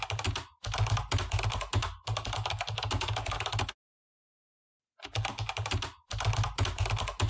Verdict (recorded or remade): recorded